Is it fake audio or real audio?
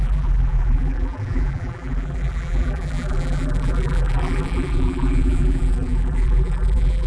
fake